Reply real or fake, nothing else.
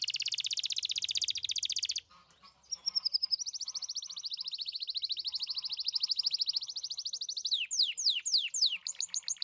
real